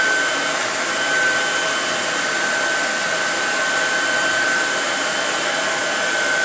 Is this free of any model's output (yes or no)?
no